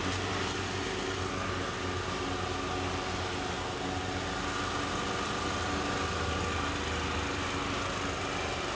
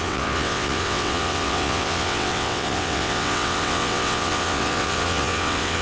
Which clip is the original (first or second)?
first